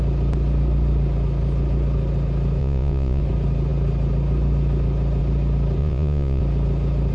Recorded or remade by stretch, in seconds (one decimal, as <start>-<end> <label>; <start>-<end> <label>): 0.0-2.6 recorded; 2.6-3.2 remade; 3.2-5.8 recorded; 5.8-6.4 remade; 6.4-7.1 recorded

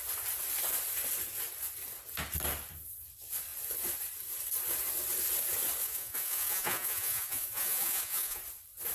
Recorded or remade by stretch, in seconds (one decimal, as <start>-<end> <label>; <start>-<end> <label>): 0.0-5.8 recorded; 5.8-8.4 remade; 8.4-8.9 recorded

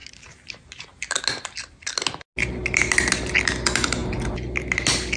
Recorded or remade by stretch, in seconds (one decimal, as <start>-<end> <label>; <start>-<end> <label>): 0.0-1.2 remade; 1.2-5.2 recorded

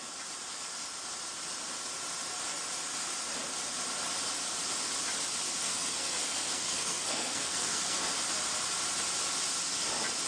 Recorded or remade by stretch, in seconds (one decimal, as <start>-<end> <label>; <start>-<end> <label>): 0.0-5.6 recorded; 5.6-8.0 remade; 8.0-10.3 recorded

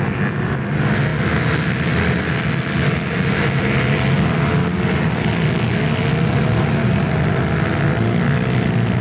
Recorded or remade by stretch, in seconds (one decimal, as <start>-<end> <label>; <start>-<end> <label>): 0.0-9.0 recorded